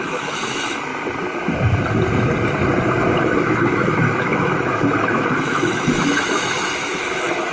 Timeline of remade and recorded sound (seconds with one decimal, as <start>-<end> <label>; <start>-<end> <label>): 0.0-0.9 remade; 0.9-3.2 recorded; 3.2-7.5 remade